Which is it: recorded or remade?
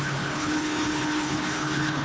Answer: remade